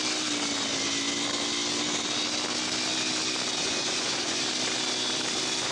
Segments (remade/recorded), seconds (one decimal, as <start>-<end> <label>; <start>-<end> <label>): 0.0-3.6 recorded; 3.6-4.4 remade; 4.4-5.7 recorded

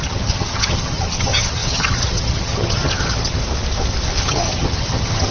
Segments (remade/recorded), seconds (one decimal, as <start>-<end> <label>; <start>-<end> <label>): 0.0-3.4 remade; 3.4-4.2 recorded; 4.2-5.3 remade

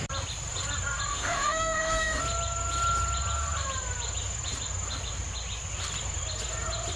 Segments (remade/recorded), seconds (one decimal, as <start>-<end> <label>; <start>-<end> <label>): 0.0-1.1 recorded; 1.1-2.2 remade; 2.2-7.0 recorded

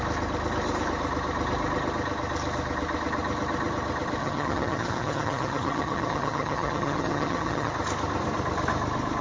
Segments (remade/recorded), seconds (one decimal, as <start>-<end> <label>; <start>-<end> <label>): 0.0-4.2 recorded; 4.2-7.7 remade; 7.7-9.2 recorded

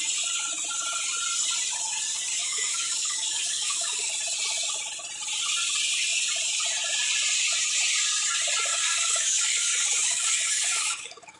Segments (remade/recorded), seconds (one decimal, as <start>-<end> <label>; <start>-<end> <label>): 0.0-2.4 recorded; 2.4-4.1 remade; 4.1-8.7 recorded; 8.7-11.4 remade

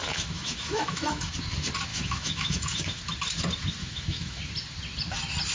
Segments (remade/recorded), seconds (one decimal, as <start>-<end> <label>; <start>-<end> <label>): 0.0-1.3 remade; 1.3-1.9 recorded; 1.9-3.0 remade; 3.0-3.8 recorded; 3.8-4.4 remade; 4.4-5.5 recorded

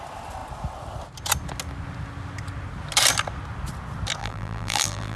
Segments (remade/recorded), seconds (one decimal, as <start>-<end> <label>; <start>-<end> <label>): 0.0-4.2 recorded; 4.2-5.2 remade